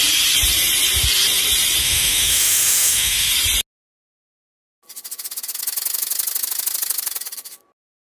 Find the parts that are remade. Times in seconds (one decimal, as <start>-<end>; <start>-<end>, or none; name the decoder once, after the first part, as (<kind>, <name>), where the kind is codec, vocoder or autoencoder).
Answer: 1.8-3.3 (autoencoder, DAC-VAE)